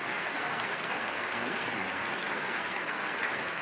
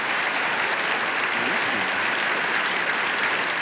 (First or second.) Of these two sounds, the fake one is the first